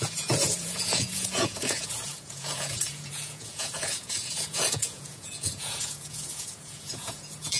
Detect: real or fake fake